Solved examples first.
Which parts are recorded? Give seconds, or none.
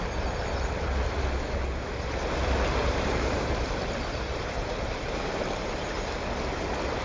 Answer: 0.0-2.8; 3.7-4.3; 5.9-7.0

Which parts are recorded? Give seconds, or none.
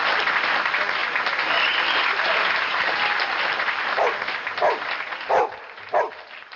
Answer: 1.0-1.6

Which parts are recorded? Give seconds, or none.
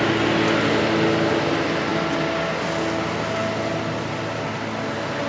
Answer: 0.0-5.3